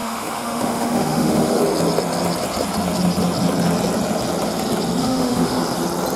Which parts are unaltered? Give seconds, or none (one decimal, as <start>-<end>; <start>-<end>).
1.6-5.0; 5.6-6.2